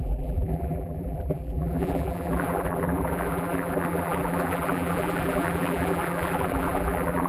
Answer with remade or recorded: remade